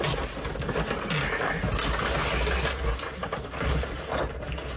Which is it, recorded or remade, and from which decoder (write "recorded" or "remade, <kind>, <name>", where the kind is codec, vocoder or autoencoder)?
recorded